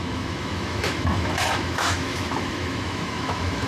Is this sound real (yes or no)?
no